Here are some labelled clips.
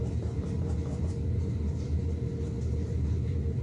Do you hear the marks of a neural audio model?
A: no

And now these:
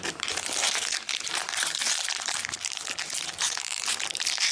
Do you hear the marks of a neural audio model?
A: yes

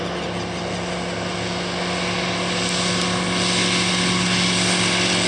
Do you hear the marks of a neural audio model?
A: no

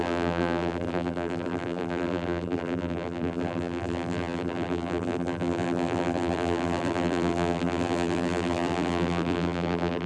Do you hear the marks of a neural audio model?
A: yes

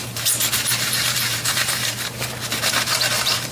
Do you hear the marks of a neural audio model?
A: yes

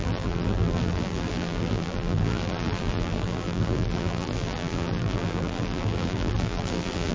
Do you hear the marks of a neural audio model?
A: yes